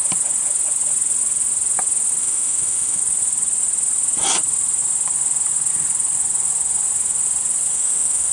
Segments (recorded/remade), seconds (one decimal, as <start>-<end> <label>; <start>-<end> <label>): 0.0-2.2 recorded; 2.2-3.0 remade; 3.0-7.7 recorded; 7.7-8.3 remade

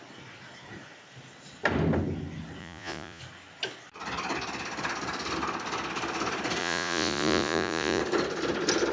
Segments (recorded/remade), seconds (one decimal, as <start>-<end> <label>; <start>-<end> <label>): 0.0-2.6 recorded; 2.6-3.2 remade; 3.2-6.6 recorded; 6.6-8.0 remade; 8.0-8.9 recorded

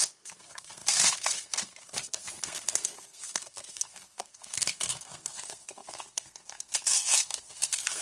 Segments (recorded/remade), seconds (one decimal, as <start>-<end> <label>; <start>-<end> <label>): 0.0-8.0 remade

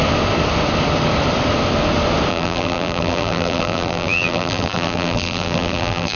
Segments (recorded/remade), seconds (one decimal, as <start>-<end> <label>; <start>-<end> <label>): 0.0-2.3 recorded; 2.3-6.2 remade

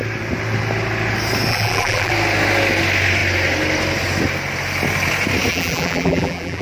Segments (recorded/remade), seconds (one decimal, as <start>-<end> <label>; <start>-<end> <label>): 0.0-1.5 recorded; 1.5-2.1 remade; 2.1-5.5 recorded; 5.5-6.6 remade

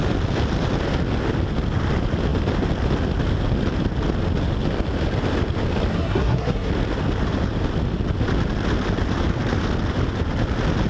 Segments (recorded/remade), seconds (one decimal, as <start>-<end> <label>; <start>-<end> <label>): 0.0-5.9 recorded; 5.9-6.7 remade; 6.7-10.9 recorded